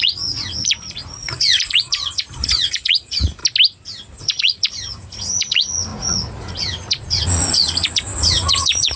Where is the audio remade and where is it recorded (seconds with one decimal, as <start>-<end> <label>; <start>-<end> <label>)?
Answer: 0.0-3.4 remade; 3.4-4.2 recorded; 4.2-9.0 remade